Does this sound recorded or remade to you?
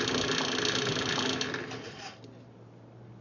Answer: recorded